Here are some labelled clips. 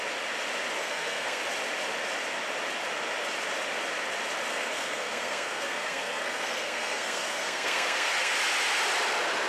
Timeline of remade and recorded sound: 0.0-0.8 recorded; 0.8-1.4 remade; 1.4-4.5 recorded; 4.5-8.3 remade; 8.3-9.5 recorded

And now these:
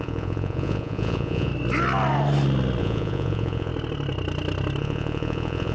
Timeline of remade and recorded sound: 0.0-1.5 remade; 1.5-2.8 recorded; 2.8-3.7 remade; 3.7-4.8 recorded; 4.8-5.7 remade